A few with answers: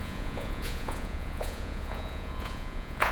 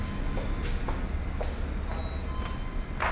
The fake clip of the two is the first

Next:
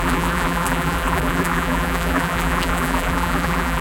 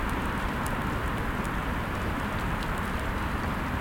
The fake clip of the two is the first